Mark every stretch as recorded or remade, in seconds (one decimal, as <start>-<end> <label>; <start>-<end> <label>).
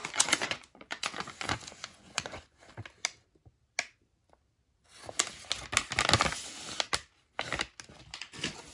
0.0-2.7 remade; 2.7-8.7 recorded